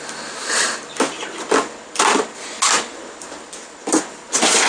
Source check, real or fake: real